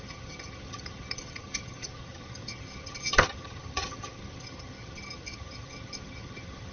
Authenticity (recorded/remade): remade